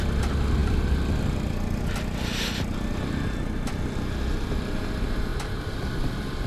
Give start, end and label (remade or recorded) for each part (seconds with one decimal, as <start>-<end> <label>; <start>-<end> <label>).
0.0-5.3 recorded; 5.3-6.1 remade; 6.1-6.5 recorded